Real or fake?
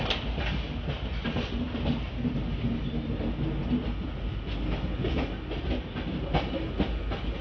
real